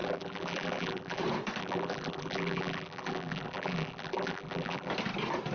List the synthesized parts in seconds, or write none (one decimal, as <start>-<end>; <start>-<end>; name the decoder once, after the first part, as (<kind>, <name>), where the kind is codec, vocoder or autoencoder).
0.0-1.2 (vocoder, BigVGAN v2); 1.6-4.9